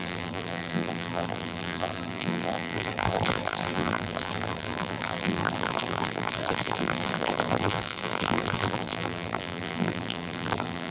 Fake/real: fake